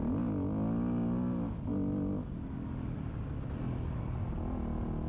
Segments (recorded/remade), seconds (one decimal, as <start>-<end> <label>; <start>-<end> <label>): 0.0-5.1 recorded